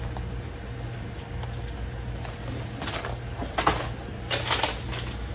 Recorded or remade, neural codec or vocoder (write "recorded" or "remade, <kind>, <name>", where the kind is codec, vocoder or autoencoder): recorded